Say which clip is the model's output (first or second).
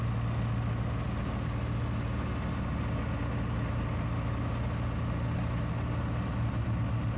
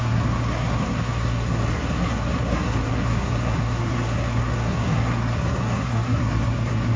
second